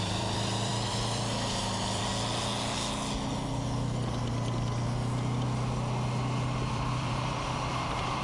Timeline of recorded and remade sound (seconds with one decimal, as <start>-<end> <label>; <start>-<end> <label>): 0.0-2.1 remade; 2.1-6.7 recorded; 6.7-8.2 remade